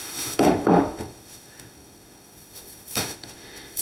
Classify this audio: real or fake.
fake